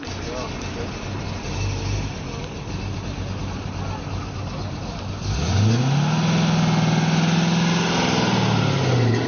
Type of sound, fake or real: real